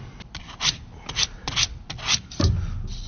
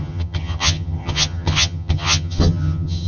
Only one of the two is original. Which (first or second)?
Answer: first